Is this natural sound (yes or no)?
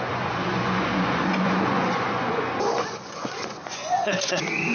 no